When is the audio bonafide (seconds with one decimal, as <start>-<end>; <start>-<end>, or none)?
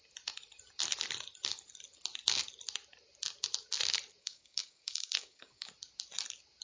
0.0-4.2; 5.7-6.6